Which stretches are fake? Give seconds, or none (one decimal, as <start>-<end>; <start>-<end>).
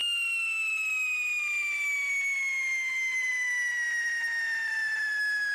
none